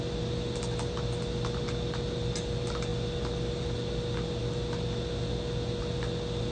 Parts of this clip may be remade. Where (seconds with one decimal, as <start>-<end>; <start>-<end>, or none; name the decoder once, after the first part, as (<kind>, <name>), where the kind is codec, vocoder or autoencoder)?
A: none